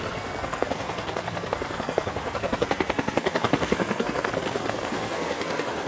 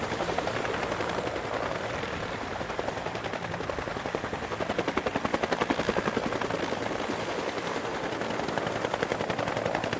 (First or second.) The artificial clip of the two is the first